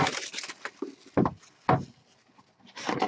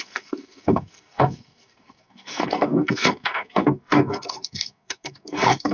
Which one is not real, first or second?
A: second